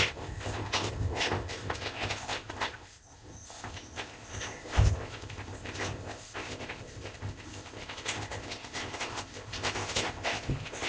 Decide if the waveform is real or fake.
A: fake